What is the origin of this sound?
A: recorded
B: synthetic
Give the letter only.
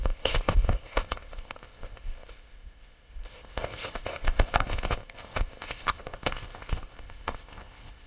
B